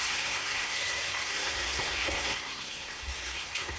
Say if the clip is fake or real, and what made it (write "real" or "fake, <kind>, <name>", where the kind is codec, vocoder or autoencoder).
fake, codec, SNAC